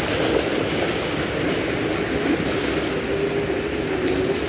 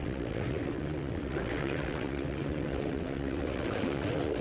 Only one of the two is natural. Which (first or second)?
first